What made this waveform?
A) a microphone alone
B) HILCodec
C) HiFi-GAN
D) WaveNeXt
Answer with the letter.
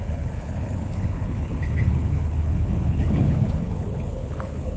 B